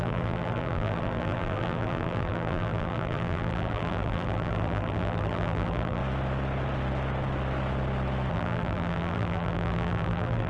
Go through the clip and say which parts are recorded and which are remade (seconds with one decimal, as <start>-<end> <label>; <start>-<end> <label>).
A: 0.0-6.0 remade; 6.0-8.3 recorded; 8.3-10.5 remade